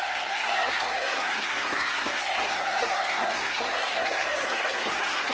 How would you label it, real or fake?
fake